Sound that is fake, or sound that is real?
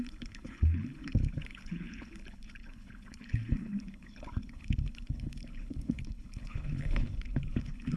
fake